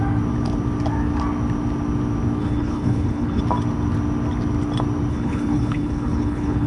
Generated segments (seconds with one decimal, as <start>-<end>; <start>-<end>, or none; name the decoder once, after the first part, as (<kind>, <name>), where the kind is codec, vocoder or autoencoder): 2.4-3.4 (codec, HILCodec); 5.1-6.7